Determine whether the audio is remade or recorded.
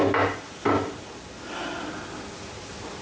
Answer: recorded